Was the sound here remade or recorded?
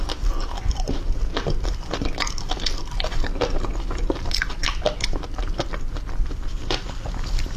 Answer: recorded